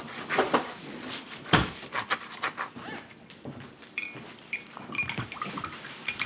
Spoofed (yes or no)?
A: yes